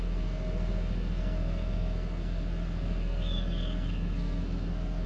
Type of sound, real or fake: fake